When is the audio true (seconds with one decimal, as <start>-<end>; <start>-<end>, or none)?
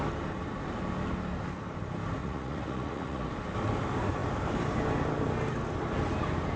0.0-2.2; 3.3-6.6